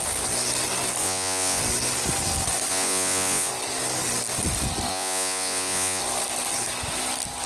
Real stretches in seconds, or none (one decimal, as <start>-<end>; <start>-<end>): 0.0-1.0; 1.6-2.7; 3.5-4.9; 6.0-7.5